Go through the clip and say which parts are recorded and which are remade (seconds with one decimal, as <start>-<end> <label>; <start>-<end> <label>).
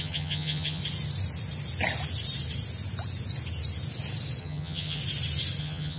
0.0-0.8 remade; 0.8-4.4 recorded; 4.4-5.0 remade; 5.0-5.6 recorded; 5.6-6.0 remade